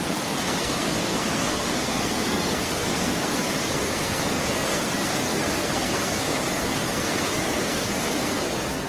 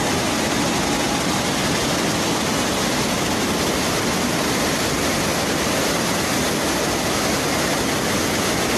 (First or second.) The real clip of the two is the second